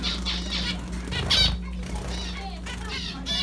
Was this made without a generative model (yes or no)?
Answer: yes